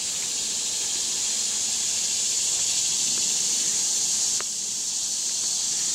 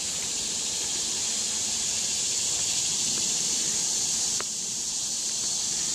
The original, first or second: first